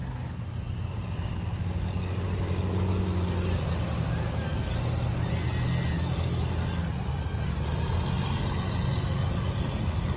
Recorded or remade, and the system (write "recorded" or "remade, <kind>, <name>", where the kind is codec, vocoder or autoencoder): recorded